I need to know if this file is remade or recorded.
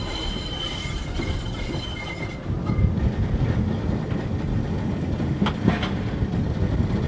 recorded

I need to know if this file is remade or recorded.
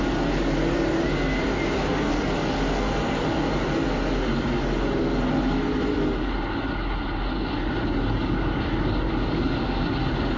recorded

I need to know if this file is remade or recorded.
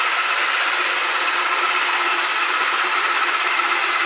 recorded